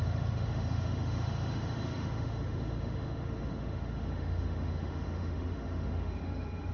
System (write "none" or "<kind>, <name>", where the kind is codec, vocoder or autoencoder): autoencoder, DAC-VAE